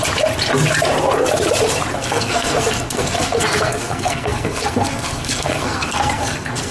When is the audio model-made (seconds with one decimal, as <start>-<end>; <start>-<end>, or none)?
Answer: 1.9-6.7